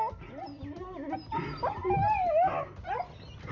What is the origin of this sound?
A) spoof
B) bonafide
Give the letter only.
B